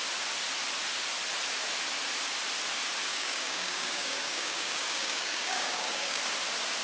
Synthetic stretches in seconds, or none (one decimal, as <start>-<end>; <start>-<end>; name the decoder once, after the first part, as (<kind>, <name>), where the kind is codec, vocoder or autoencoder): 3.1-6.2 (codec, DAC)